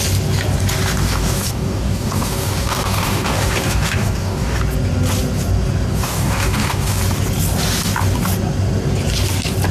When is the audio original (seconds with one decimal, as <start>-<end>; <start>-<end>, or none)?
0.0-1.0; 4.6-5.9; 7.0-9.7